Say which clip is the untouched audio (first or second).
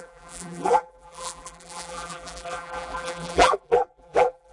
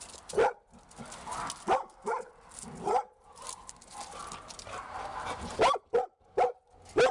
second